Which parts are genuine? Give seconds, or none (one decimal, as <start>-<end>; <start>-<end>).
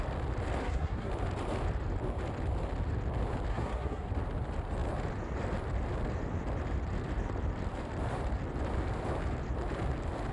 0.0-0.6; 1.1-3.5; 4.1-10.3